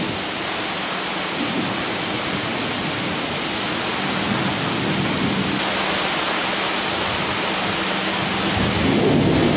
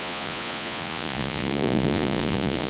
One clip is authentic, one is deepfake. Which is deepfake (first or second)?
second